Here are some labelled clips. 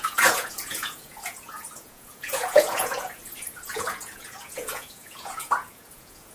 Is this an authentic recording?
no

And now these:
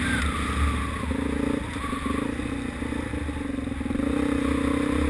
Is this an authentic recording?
yes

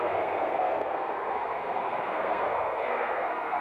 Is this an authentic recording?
no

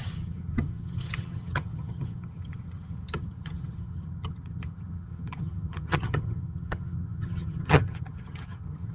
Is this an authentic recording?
no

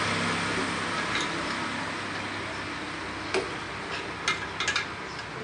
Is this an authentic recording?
yes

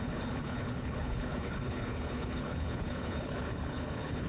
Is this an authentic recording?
no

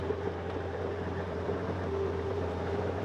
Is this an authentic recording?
no